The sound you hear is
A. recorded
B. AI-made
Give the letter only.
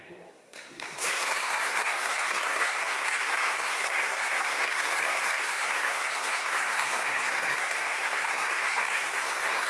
B